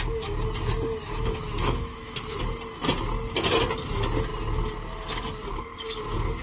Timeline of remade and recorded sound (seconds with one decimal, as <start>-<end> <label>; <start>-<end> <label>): 0.0-1.0 recorded; 1.0-2.4 remade; 2.4-6.4 recorded